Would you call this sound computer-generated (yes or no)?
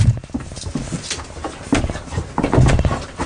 no